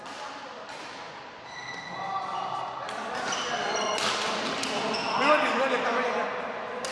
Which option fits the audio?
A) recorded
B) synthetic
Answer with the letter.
A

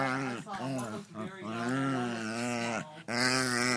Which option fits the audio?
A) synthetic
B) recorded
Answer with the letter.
B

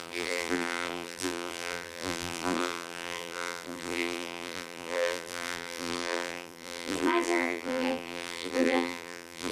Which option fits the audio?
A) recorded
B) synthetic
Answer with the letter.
B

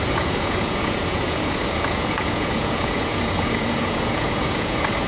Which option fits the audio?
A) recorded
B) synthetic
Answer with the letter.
B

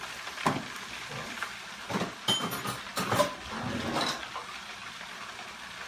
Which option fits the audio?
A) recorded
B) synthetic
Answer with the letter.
A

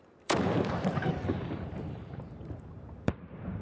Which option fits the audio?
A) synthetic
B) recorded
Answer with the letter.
A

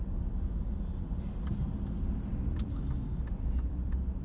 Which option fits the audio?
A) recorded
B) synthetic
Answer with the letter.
A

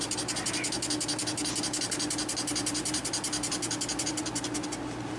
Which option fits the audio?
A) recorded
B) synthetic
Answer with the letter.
A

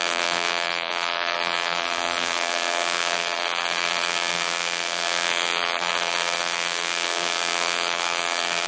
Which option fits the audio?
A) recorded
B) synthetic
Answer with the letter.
B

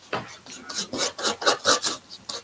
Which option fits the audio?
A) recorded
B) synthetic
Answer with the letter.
A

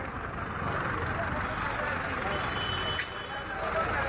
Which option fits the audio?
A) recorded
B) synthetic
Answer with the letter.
A